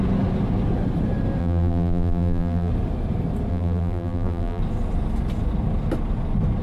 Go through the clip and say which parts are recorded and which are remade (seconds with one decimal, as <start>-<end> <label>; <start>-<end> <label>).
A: 0.0-1.4 recorded; 1.4-2.7 remade; 2.7-3.5 recorded; 3.5-4.6 remade; 4.6-6.6 recorded